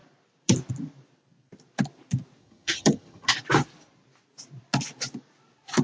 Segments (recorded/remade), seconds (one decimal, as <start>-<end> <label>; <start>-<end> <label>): 0.0-2.4 recorded; 2.4-3.3 remade; 3.3-5.8 recorded